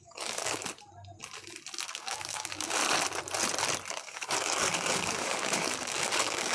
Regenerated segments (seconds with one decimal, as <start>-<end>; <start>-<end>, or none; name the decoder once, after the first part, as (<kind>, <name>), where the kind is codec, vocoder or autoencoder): 0.0-0.6 (codec, DAC); 1.9-2.8; 3.9-6.5